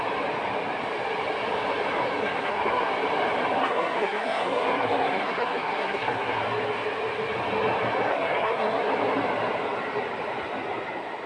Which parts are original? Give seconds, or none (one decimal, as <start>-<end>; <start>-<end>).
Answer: 0.0-2.2; 2.9-3.6; 6.4-8.1; 8.9-11.3